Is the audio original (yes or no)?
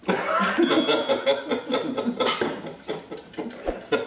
yes